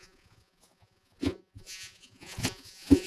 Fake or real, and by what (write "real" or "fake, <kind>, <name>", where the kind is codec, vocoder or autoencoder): fake, vocoder, Vocos